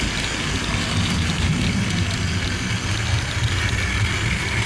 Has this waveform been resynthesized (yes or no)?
no